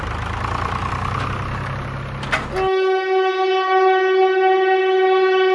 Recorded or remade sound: recorded